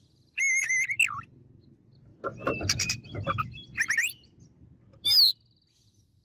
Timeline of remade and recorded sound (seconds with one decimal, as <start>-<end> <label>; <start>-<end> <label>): 0.0-6.2 recorded

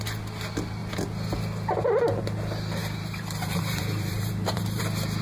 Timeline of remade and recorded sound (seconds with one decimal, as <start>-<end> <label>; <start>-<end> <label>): 0.0-2.8 recorded; 2.8-4.8 remade; 4.8-5.2 recorded

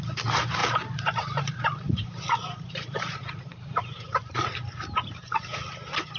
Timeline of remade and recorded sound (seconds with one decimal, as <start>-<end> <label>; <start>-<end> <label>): 0.0-0.6 recorded; 0.6-4.3 remade; 4.3-6.2 recorded